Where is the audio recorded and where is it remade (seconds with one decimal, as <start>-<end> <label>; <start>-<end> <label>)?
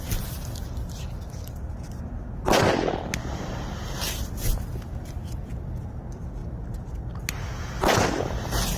0.0-8.8 recorded